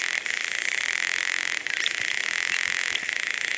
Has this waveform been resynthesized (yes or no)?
no